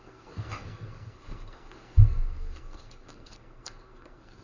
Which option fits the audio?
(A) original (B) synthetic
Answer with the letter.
B